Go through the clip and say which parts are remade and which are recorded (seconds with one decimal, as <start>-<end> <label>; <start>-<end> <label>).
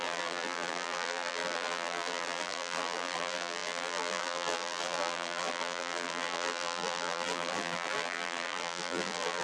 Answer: 0.0-9.4 remade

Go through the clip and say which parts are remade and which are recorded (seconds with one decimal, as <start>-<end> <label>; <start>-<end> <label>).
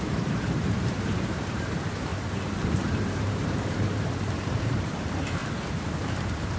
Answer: 0.0-2.1 remade; 2.1-2.8 recorded; 2.8-5.4 remade; 5.4-6.0 recorded; 6.0-6.6 remade